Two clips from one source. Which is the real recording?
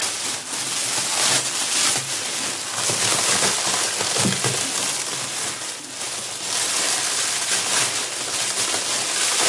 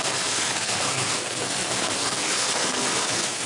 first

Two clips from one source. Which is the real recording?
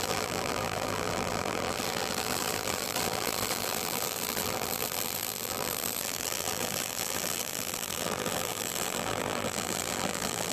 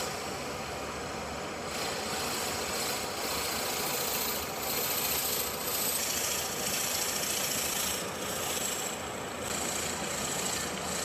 second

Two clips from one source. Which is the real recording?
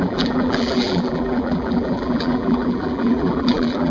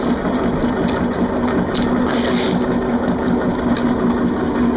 second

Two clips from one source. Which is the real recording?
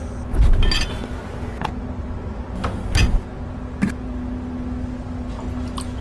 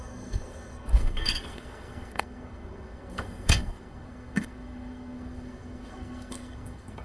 first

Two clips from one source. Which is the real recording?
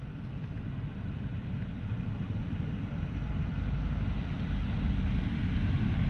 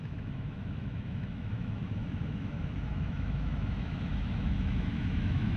first